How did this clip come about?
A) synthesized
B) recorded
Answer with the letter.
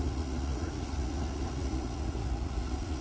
A